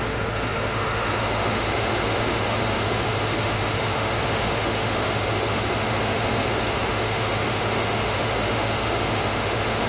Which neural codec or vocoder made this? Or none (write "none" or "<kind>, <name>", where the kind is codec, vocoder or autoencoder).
autoencoder, DAC-VAE